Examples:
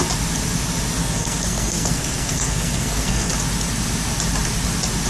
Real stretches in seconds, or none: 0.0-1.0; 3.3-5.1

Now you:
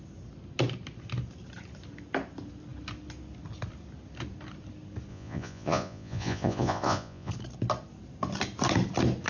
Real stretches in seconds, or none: 0.0-5.1; 7.3-9.3